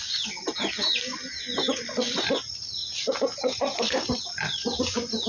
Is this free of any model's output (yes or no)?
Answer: yes